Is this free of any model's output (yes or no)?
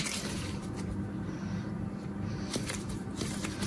no